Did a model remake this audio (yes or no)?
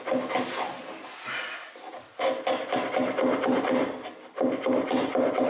no